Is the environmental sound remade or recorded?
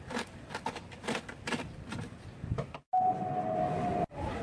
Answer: recorded